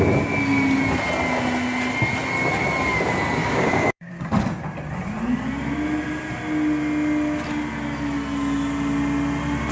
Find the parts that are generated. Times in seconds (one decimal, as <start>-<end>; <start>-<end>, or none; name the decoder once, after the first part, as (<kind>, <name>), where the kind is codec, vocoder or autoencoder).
3.4-4.1 (codec, DAC)